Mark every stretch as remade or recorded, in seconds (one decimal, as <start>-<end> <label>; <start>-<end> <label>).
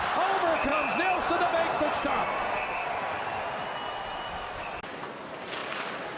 0.0-6.2 recorded